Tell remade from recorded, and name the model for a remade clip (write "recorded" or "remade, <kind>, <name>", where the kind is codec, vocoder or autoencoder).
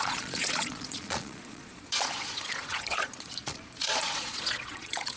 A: remade, vocoder, Vocos